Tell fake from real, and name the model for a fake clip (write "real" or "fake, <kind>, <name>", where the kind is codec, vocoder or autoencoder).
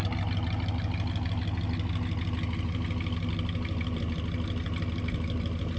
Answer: real